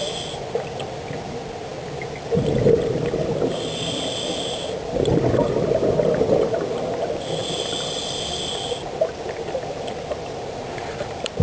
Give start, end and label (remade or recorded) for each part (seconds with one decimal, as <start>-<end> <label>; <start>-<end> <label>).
0.0-11.4 recorded